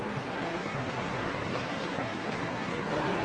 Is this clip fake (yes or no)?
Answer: yes